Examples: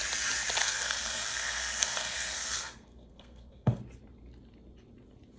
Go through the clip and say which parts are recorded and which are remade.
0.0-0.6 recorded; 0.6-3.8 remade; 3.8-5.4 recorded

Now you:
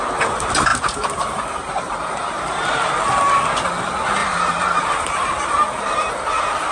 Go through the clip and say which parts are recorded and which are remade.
0.0-0.7 recorded; 0.7-3.0 remade; 3.0-4.2 recorded; 4.2-6.7 remade